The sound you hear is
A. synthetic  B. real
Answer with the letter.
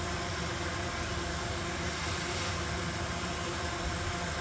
B